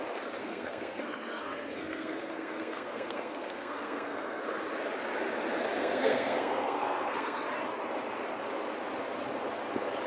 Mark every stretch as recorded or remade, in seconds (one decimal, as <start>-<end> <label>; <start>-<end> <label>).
0.0-0.4 recorded; 0.4-4.4 remade; 4.4-5.8 recorded; 5.8-7.4 remade; 7.4-10.1 recorded